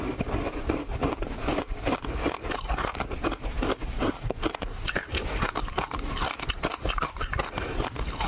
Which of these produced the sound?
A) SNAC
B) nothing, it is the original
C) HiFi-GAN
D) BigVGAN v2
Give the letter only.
D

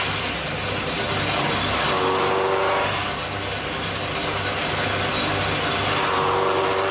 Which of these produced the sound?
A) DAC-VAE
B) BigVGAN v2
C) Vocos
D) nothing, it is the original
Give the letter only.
D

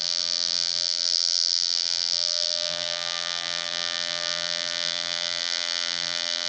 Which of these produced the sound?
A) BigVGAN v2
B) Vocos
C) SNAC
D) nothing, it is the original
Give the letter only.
A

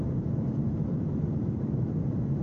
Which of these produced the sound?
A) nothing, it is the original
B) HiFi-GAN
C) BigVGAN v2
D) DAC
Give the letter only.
C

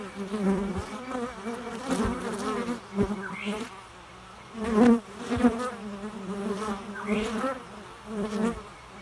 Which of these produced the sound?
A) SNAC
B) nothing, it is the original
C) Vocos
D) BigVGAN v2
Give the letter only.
D